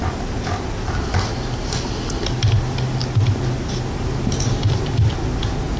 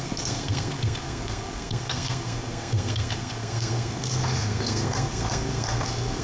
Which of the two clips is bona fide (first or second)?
first